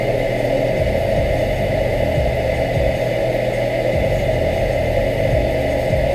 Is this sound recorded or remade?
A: recorded